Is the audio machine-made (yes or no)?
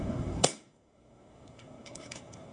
yes